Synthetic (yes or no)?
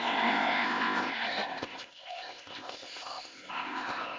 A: yes